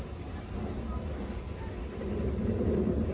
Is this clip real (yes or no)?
yes